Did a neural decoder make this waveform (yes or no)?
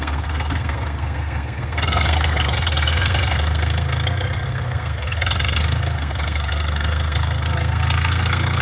yes